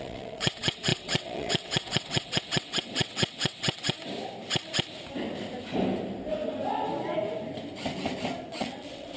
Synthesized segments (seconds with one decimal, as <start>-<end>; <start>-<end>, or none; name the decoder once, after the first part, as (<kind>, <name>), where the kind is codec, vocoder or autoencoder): 0.0-4.0 (vocoder, WaveNeXt); 8.5-9.2